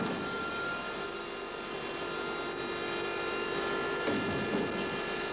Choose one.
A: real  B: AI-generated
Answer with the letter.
A